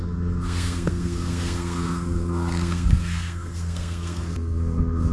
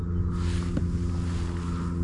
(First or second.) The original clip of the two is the second